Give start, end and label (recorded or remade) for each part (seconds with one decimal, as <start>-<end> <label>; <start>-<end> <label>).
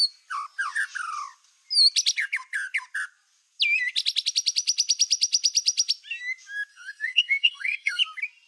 0.0-6.7 recorded; 6.7-8.0 remade; 8.0-8.5 recorded